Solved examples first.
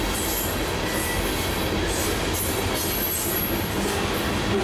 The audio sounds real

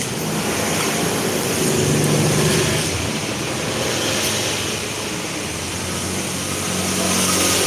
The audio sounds real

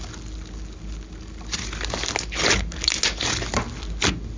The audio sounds real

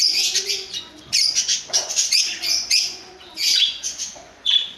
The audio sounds fake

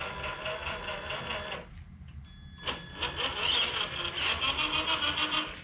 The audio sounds real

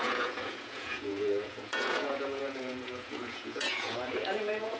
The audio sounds fake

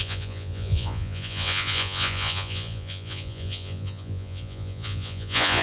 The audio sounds fake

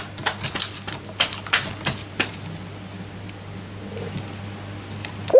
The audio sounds real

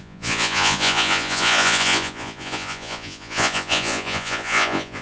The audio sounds fake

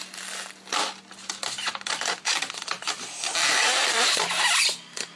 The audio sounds real